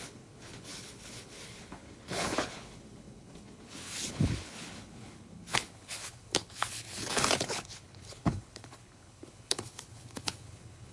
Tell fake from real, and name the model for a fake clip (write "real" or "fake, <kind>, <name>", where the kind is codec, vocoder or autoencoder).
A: fake, codec, HILCodec